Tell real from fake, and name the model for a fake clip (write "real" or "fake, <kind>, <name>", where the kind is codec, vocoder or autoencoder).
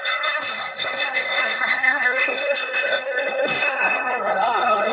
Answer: fake, codec, SNAC